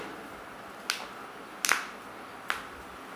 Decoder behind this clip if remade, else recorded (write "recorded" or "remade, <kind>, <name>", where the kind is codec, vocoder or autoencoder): recorded